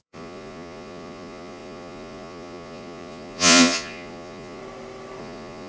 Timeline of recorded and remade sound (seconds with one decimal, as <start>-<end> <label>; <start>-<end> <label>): 0.0-4.6 remade; 4.6-5.2 recorded; 5.2-5.7 remade